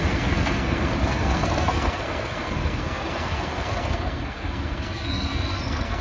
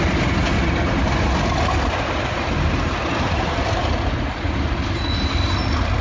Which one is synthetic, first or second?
first